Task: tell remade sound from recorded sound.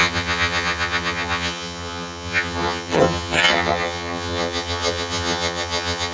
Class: remade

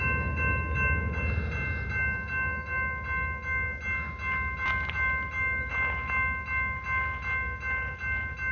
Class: recorded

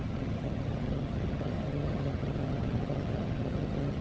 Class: remade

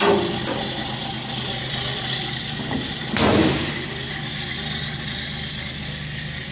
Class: recorded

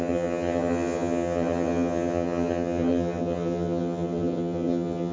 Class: remade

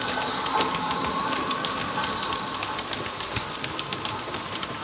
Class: recorded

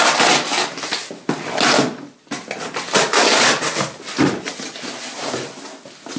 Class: recorded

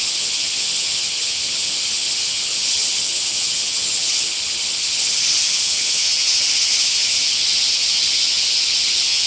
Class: remade